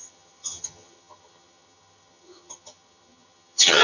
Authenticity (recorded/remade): remade